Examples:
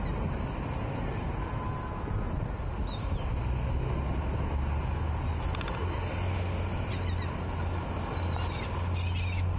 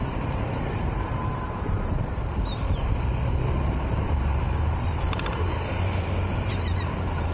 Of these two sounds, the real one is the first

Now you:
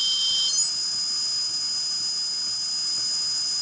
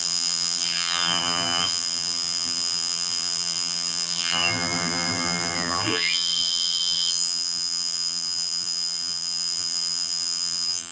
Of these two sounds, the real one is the first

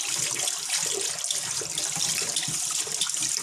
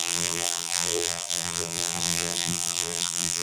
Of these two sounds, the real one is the first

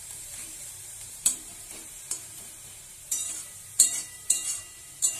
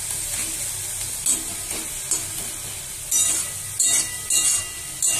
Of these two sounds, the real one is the second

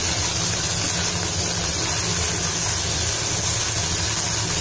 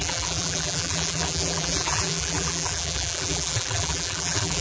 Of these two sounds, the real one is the first